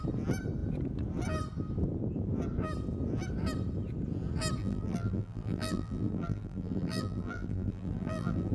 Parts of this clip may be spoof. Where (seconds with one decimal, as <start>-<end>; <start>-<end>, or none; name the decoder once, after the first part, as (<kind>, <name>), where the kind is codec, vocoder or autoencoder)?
4.6-8.5 (vocoder, BigVGAN v2)